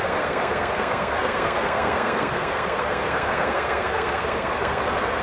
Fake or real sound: fake